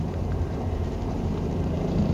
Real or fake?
fake